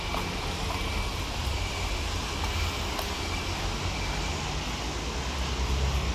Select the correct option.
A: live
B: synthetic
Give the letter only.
A